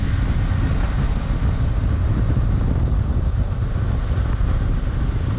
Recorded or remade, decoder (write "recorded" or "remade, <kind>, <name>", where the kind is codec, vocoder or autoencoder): recorded